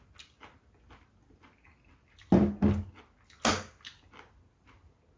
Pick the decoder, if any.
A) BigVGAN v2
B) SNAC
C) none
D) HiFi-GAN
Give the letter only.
C